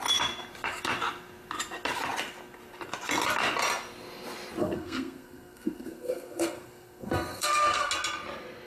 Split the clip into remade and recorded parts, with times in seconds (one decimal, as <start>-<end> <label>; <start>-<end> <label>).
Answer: 0.0-4.6 recorded; 4.6-7.9 remade; 7.9-8.7 recorded